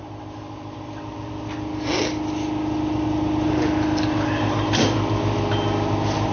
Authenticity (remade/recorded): recorded